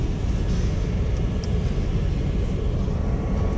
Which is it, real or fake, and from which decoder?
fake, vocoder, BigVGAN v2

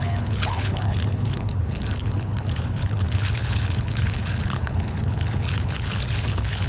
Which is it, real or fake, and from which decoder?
fake, codec, HILCodec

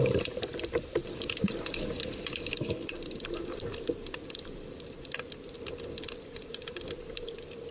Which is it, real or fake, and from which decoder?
fake, vocoder, BigVGAN v2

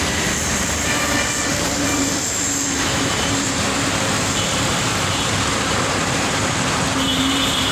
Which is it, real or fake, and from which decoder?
fake, vocoder, BigVGAN v2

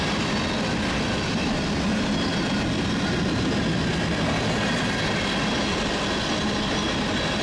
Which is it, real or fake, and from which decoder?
real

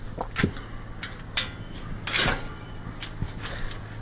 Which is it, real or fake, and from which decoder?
real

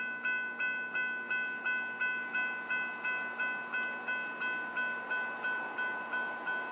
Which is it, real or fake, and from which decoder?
real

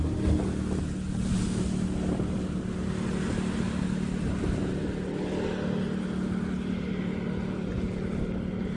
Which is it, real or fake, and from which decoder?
real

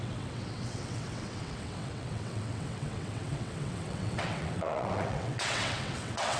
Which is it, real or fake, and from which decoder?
fake, vocoder, WaveNeXt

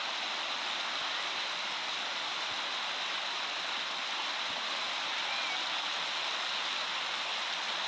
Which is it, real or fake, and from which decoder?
real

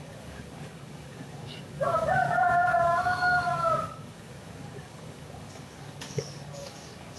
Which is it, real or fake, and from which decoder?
fake, codec, DAC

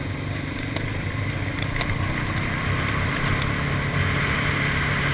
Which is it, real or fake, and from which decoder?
real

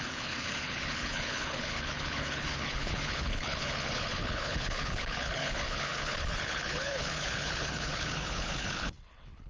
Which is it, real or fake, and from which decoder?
fake, codec, HILCodec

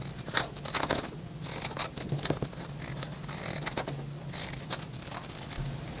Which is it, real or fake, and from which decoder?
real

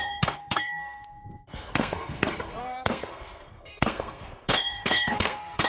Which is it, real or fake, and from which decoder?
fake, codec, SNAC